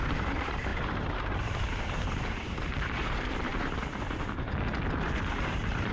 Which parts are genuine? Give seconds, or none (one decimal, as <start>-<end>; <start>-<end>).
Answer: 3.5-5.5